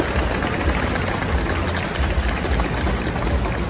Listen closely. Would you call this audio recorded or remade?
recorded